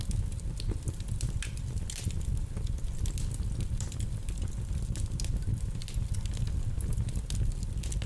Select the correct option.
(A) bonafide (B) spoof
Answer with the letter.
A